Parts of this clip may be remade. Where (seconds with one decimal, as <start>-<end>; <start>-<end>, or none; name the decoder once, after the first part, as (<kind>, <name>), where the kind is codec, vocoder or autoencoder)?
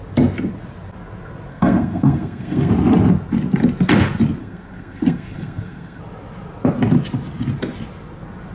1.5-2.7 (codec, SNAC); 4.4-6.0